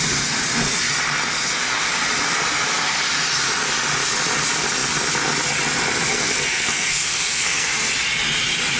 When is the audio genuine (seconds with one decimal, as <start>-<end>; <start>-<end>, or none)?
0.0-6.1; 7.7-8.8